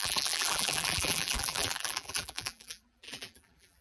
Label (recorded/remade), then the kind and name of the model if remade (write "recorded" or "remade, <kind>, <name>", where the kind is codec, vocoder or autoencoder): remade, vocoder, BigVGAN v2